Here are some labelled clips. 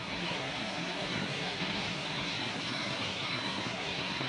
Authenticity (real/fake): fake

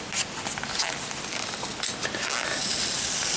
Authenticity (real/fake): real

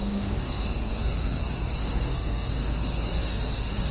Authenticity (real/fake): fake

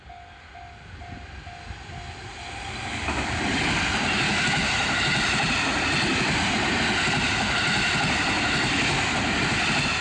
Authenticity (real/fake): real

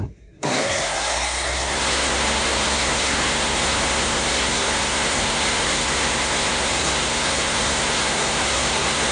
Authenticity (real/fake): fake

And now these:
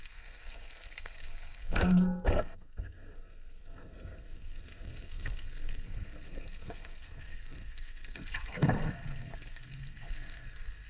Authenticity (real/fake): fake